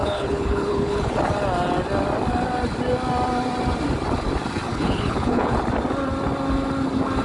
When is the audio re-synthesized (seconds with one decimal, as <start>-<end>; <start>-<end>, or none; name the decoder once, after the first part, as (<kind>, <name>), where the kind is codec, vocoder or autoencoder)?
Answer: 0.0-1.1 (codec, HILCodec); 4.7-5.6